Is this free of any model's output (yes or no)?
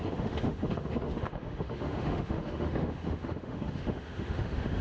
no